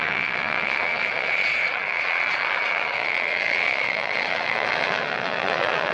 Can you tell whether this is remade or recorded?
remade